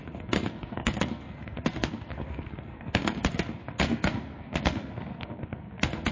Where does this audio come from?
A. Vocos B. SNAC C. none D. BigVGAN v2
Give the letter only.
B